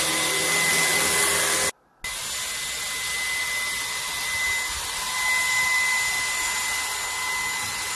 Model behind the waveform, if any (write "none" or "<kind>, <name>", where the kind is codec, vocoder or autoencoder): none